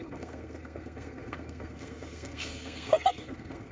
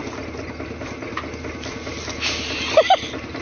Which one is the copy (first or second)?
first